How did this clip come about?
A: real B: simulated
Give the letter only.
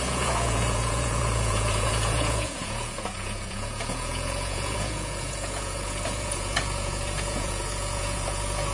B